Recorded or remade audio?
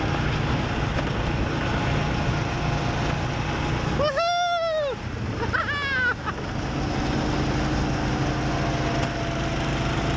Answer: recorded